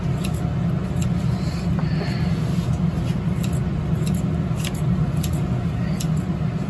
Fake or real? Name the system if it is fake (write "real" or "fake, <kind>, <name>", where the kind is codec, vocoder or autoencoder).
real